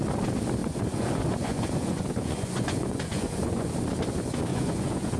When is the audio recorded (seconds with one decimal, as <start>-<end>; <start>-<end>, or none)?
0.0-0.6; 3.7-4.5

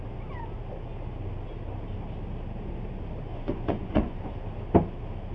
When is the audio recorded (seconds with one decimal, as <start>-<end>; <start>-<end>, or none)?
0.0-3.3; 4.3-5.3

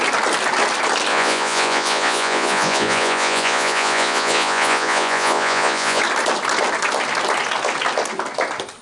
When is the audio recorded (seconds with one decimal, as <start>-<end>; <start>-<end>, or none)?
0.0-1.1; 6.0-8.8

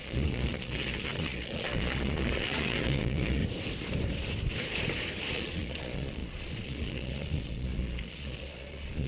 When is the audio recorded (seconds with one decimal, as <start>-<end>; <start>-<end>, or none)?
3.4-5.3

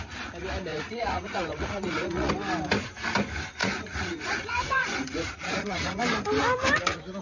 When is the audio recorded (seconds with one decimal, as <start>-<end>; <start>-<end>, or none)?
0.0-0.7; 2.3-3.6; 6.0-7.2

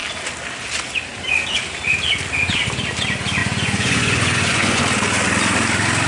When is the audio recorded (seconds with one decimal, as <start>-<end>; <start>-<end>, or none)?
0.0-3.4; 4.8-6.1

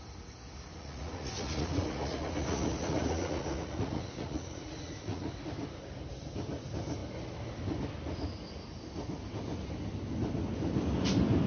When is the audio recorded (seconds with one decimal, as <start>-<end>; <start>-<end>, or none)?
0.0-0.7; 5.3-11.5